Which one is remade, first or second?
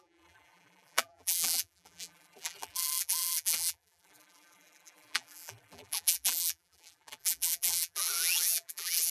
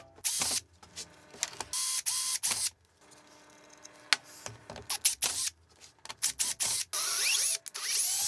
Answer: first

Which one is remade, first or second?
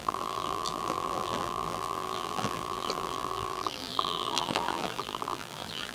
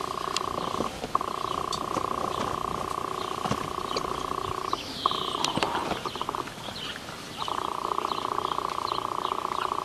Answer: first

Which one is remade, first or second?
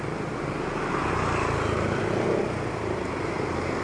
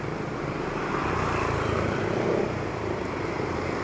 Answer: second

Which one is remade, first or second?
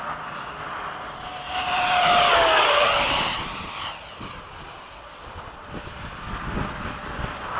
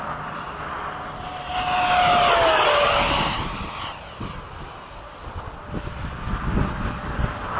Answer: first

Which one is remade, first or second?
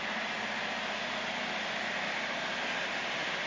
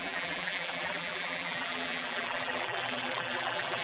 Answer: second